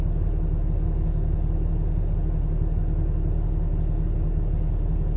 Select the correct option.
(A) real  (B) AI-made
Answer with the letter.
A